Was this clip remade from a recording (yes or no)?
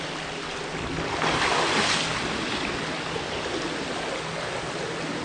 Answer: no